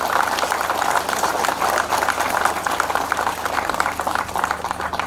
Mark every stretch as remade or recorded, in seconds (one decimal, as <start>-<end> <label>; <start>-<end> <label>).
0.0-5.1 recorded